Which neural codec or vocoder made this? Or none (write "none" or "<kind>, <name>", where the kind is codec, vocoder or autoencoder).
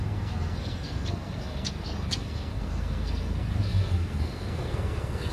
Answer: codec, SNAC